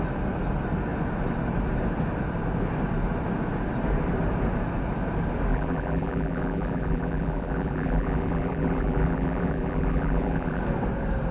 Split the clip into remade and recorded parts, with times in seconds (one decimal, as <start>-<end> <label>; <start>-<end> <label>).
0.0-5.5 recorded; 5.5-10.6 remade; 10.6-11.3 recorded